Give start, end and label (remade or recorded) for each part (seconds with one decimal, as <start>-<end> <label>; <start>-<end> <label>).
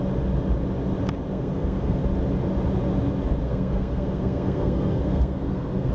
0.0-1.3 recorded; 1.3-2.0 remade; 2.0-3.4 recorded; 3.4-5.9 remade